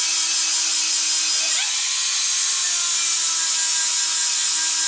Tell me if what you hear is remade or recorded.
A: recorded